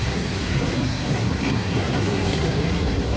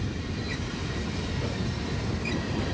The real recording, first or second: second